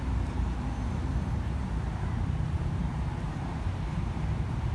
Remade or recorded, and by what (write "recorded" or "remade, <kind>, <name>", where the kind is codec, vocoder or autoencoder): remade, vocoder, BigVGAN v2